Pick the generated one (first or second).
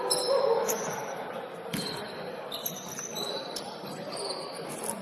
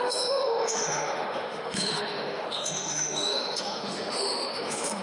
second